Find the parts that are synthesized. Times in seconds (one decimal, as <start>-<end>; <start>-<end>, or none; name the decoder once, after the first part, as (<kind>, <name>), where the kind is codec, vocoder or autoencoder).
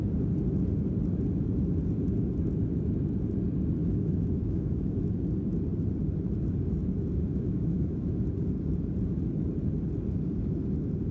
3.8-5.0 (autoencoder, DAC-VAE); 7.3-8.1